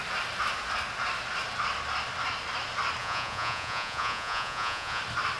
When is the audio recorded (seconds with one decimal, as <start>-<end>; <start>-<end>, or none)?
0.0-3.0; 5.0-5.4